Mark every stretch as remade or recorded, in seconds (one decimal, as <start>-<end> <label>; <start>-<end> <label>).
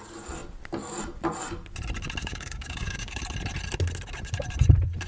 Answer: 0.0-2.2 recorded; 2.2-3.2 remade; 3.2-5.1 recorded